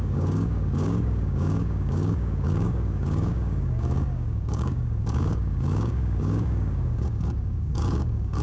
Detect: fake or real fake